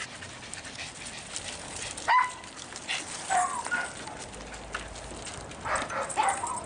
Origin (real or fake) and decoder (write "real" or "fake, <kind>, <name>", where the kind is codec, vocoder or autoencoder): real